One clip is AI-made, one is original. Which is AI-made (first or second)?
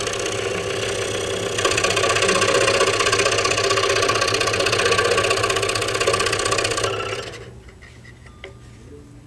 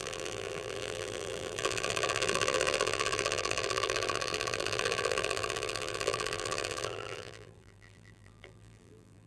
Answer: second